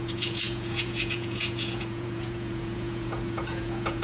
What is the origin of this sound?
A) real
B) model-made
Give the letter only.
B